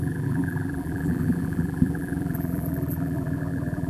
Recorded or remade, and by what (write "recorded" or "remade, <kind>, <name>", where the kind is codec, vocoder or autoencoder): remade, vocoder, BigVGAN v2